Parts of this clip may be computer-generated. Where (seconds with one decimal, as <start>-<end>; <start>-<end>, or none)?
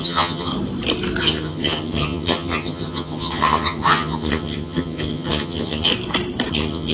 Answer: 0.0-0.5; 1.2-5.9; 6.5-6.9